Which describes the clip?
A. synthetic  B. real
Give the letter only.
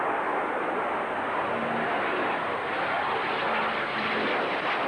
B